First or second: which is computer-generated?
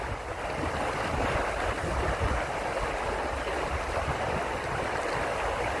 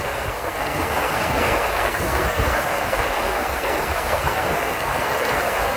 second